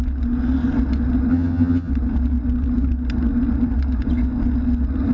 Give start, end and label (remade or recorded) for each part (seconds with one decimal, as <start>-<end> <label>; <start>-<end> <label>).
0.0-1.3 recorded; 1.3-1.9 remade; 1.9-5.1 recorded